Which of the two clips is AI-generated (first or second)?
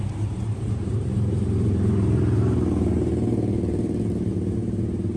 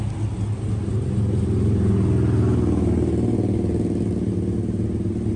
first